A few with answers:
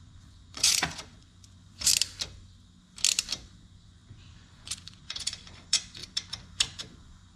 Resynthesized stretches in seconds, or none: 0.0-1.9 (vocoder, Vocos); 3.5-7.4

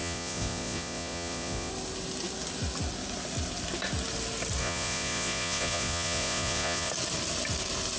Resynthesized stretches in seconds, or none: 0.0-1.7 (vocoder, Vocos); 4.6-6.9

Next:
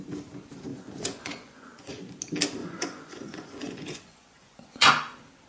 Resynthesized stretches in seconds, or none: 0.7-1.9 (vocoder, Vocos); 2.6-4.9

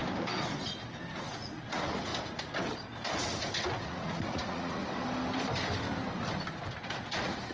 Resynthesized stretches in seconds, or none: 1.1-2.1 (vocoder, Vocos); 3.2-4.8; 6.7-7.5